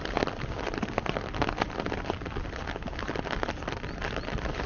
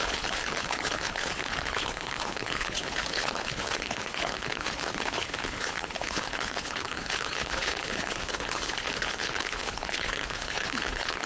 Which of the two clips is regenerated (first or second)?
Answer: second